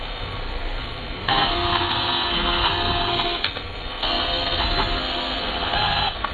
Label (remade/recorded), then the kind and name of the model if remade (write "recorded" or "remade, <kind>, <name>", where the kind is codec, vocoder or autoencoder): remade, codec, SNAC